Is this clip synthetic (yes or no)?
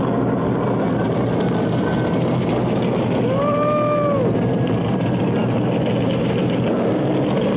no